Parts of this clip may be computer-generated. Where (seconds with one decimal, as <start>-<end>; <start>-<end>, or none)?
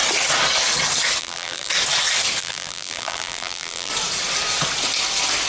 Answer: 1.2-1.7; 2.4-3.9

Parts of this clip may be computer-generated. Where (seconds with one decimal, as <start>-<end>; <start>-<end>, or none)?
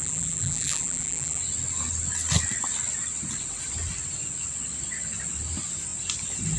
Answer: 0.0-1.4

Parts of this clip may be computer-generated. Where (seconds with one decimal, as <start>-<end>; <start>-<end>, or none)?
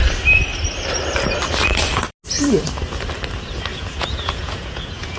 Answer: 3.7-5.2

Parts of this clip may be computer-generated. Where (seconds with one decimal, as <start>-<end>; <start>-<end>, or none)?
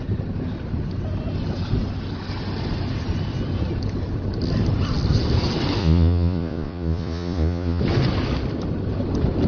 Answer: 5.8-7.8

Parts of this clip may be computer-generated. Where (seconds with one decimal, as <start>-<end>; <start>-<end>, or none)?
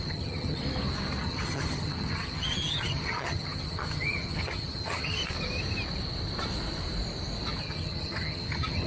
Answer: 0.0-0.6; 1.2-5.2; 7.6-8.9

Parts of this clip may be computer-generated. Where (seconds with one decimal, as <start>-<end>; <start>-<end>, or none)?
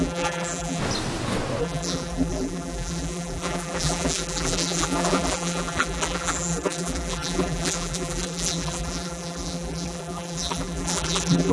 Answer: 0.0-0.8; 1.6-11.5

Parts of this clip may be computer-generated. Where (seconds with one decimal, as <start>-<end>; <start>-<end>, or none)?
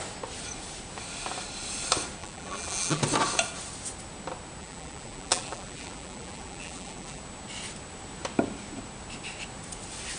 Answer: 2.2-3.0; 4.6-7.2